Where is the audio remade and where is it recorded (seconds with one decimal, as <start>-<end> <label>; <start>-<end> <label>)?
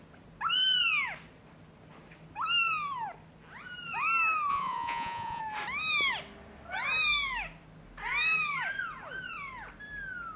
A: 0.0-4.5 recorded; 4.5-5.4 remade; 5.4-10.4 recorded